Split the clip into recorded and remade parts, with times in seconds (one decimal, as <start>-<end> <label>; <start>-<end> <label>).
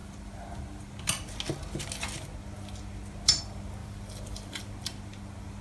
0.0-3.8 recorded; 3.8-4.6 remade; 4.6-5.6 recorded